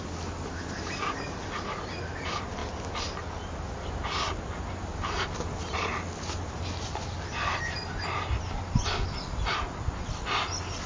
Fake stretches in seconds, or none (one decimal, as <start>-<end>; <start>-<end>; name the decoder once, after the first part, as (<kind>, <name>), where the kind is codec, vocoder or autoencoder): none